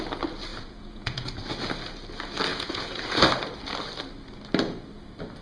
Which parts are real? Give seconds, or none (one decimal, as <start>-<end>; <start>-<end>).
0.0-0.5; 1.3-2.5; 3.2-5.4